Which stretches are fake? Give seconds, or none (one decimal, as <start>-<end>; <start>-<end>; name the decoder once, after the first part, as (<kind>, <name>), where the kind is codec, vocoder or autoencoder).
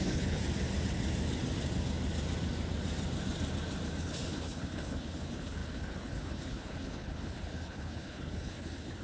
0.0-0.4 (codec, HILCodec); 4.0-9.0